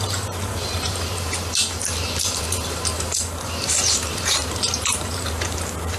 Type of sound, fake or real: fake